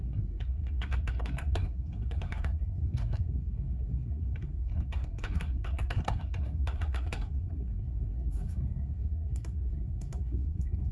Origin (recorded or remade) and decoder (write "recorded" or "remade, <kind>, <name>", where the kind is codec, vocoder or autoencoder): remade, codec, SNAC